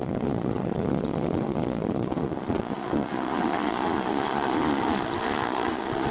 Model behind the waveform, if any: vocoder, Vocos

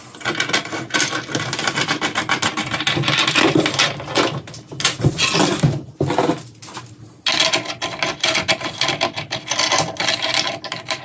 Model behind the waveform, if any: none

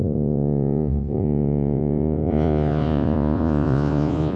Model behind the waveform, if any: vocoder, Vocos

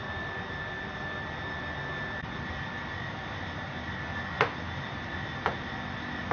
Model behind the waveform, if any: none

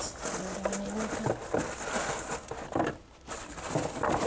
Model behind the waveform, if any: none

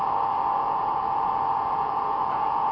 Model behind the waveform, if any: vocoder, Vocos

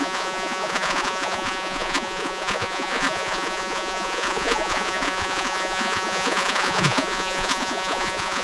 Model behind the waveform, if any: vocoder, Vocos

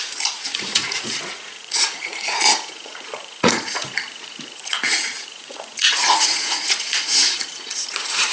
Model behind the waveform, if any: vocoder, Vocos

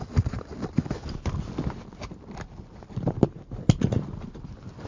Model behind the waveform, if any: none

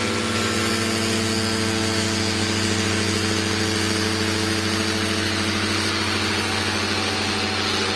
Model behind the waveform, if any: none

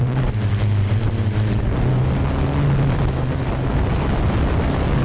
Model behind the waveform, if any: none